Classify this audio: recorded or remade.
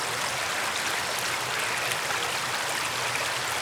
recorded